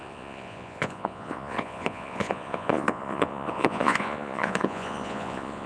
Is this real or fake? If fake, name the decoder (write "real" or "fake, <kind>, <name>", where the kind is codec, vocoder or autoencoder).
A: fake, vocoder, Vocos